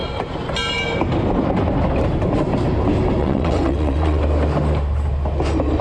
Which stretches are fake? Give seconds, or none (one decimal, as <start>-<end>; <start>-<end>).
3.2-4.2